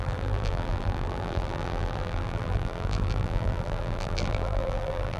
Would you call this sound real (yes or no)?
no